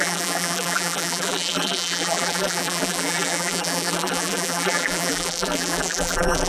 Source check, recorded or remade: remade